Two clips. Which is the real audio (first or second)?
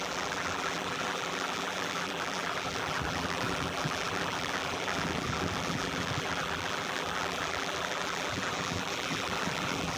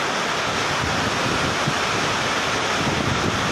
second